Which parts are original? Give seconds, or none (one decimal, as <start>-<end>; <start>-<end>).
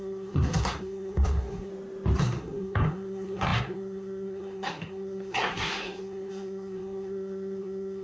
1.7-2.2